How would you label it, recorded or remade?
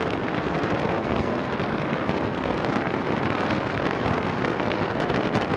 remade